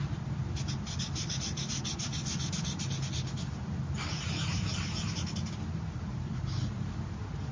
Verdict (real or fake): real